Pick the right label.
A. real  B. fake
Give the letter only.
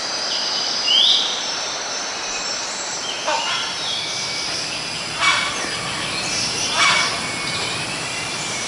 B